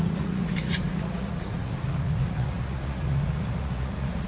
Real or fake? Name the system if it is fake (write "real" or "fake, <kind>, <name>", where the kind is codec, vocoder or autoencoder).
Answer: fake, vocoder, Vocos